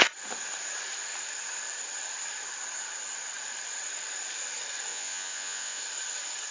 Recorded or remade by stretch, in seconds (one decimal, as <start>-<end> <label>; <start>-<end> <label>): 0.0-4.9 recorded; 4.9-5.8 remade; 5.8-6.5 recorded